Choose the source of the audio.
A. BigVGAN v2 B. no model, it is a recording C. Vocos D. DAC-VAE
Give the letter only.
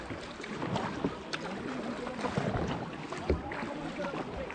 B